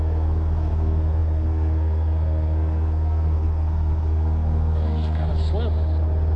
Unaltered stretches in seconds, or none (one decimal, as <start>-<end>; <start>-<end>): 5.3-6.4